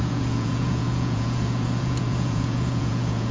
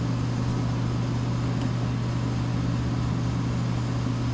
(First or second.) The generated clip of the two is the first